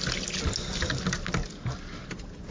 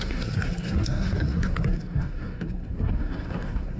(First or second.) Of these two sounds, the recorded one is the first